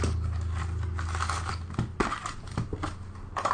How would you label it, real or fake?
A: real